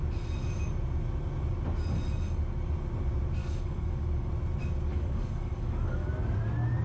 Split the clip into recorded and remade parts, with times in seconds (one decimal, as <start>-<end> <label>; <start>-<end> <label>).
0.0-3.4 recorded; 3.4-4.3 remade; 4.3-4.9 recorded; 4.9-6.1 remade; 6.1-6.8 recorded